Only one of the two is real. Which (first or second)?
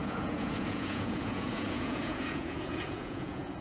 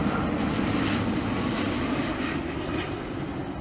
second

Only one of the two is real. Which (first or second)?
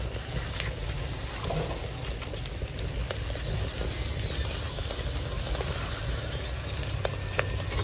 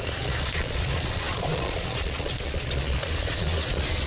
first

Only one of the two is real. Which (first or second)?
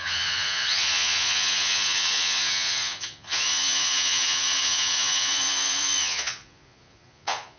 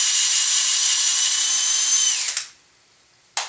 second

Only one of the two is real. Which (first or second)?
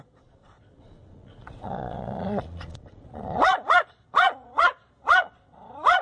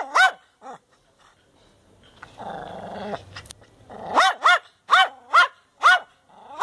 second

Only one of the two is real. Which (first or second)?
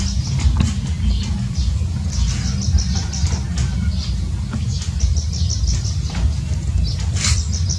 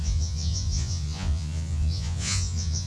first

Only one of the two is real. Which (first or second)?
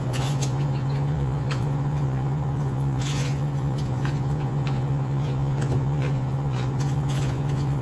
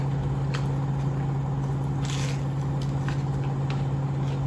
second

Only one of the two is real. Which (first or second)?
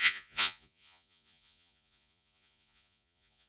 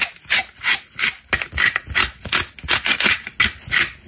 second